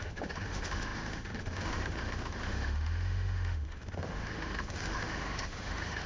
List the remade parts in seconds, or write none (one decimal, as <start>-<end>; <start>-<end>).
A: 0.0-6.1